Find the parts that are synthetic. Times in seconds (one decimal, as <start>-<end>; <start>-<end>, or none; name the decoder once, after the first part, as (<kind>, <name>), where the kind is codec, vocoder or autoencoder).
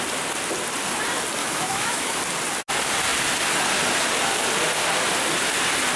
1.4-2.2 (autoencoder, DAC-VAE)